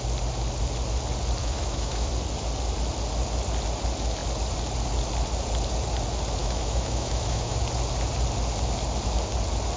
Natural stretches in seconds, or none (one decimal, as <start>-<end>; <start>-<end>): 0.0-1.4; 2.1-6.4; 7.6-9.8